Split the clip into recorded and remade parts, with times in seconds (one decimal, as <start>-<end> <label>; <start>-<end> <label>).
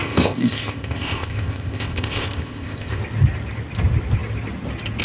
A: 0.0-3.0 remade; 3.0-5.0 recorded